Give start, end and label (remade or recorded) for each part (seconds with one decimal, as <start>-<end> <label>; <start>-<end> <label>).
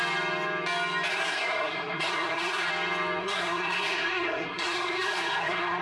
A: 0.0-1.1 recorded; 1.1-2.7 remade; 2.7-3.2 recorded; 3.2-5.8 remade